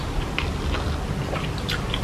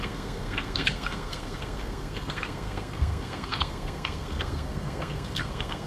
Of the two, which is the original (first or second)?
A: first